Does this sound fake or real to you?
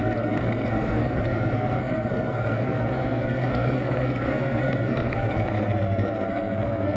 fake